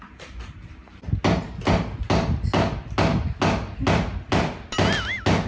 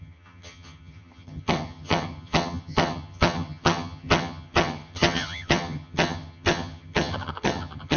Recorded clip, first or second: first